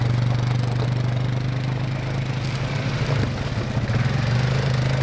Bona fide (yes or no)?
yes